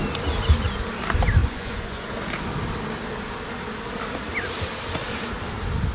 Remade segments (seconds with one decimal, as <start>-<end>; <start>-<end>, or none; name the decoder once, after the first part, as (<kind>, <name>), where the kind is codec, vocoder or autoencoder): 1.4-2.1 (vocoder, Vocos)